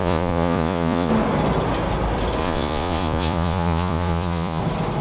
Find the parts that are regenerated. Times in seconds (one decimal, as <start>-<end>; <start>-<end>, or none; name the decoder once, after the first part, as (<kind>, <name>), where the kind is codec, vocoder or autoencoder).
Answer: 0.0-1.1 (vocoder, Vocos); 2.4-4.6